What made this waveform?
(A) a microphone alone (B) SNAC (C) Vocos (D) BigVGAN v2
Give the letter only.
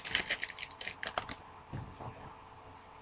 A